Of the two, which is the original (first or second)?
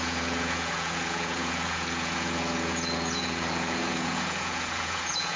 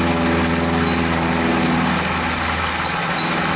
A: second